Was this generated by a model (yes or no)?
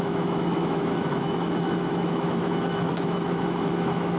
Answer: yes